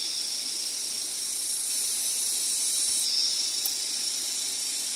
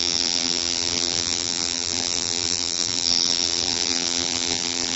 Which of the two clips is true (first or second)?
first